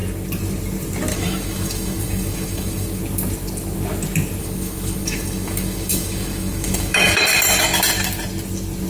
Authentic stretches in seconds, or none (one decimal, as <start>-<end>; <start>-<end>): 0.0-1.1; 3.0-4.4; 7.2-8.9